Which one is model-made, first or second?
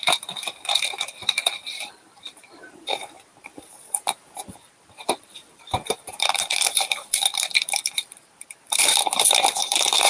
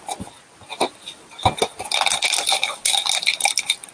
first